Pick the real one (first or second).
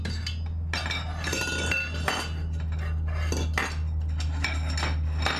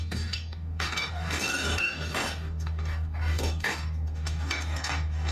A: first